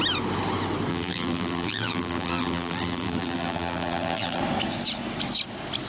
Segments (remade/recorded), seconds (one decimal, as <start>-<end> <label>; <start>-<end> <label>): 0.0-0.9 recorded; 0.9-4.4 remade; 4.4-5.9 recorded